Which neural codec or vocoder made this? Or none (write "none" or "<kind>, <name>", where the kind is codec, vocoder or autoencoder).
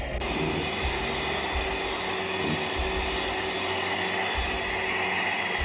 none